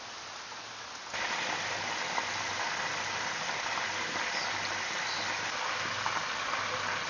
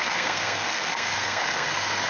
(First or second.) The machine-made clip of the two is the second